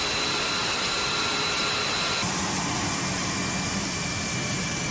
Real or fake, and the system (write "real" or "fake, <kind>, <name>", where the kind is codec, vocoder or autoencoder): real